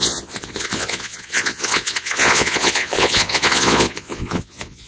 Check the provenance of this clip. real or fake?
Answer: fake